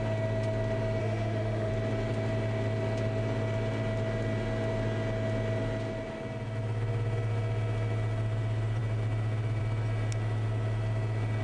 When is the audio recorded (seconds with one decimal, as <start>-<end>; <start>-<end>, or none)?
0.0-1.0; 1.7-11.4